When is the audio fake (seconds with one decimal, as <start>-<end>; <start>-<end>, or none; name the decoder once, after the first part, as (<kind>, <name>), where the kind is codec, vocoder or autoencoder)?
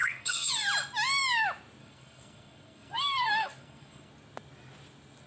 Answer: 0.0-0.5 (codec, SNAC); 1.8-4.1